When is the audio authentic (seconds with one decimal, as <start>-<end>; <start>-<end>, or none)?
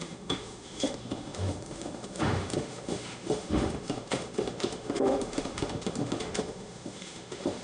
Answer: none